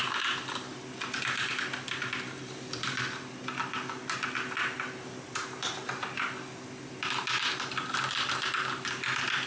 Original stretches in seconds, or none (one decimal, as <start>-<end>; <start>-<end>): 0.0-9.5